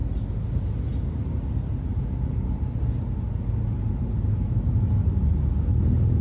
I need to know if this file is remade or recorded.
recorded